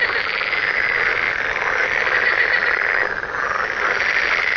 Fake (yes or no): no